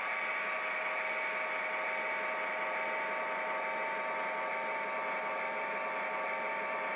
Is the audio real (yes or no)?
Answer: yes